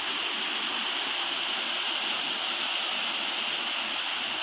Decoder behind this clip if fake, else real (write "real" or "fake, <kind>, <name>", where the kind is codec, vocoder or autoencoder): real